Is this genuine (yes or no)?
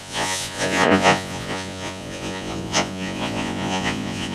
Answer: no